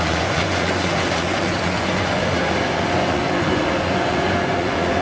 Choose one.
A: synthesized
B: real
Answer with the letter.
A